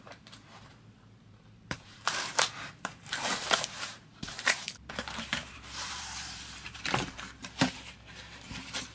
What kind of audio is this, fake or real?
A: fake